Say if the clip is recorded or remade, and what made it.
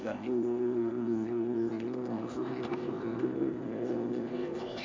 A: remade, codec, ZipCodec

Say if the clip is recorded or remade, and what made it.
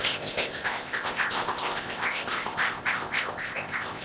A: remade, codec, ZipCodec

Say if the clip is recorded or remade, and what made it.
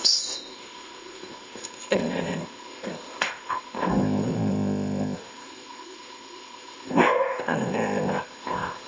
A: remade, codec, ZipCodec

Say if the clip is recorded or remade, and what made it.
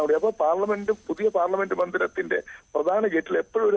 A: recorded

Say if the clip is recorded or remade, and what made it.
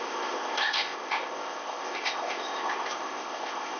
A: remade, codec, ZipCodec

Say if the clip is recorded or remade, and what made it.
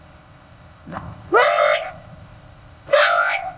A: remade, codec, ZipCodec